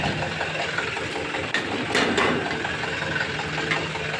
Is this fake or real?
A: fake